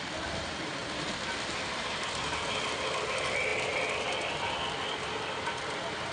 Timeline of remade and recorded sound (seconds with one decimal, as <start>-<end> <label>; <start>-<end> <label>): 0.0-0.8 remade; 0.8-2.9 recorded; 2.9-3.5 remade; 3.5-6.1 recorded